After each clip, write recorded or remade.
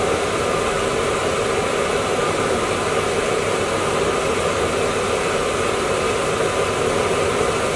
recorded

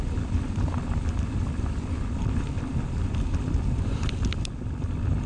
remade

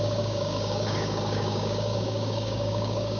remade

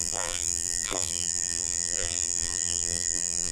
remade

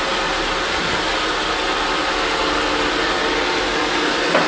recorded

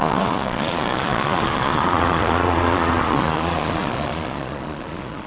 remade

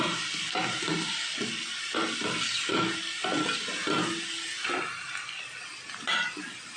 recorded